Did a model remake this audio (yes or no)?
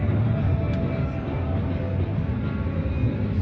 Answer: no